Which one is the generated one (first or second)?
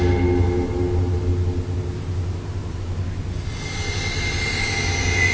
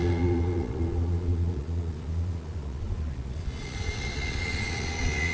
second